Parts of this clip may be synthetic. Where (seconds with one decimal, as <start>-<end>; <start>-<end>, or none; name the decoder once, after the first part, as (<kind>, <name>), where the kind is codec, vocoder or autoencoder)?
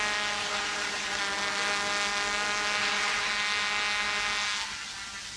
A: 0.4-1.2 (codec, HILCodec); 2.8-3.3